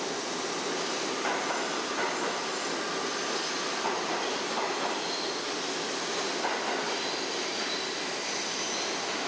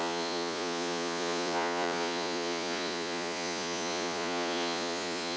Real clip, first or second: first